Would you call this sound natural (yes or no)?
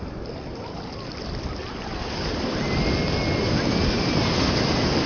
yes